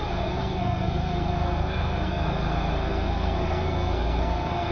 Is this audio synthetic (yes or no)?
yes